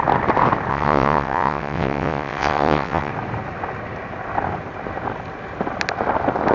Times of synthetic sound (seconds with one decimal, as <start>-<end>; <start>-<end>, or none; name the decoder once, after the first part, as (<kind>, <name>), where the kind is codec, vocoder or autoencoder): 0.7-3.1 (vocoder, WaveNeXt)